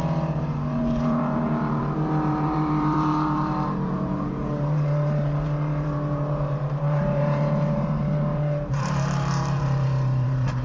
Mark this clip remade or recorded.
remade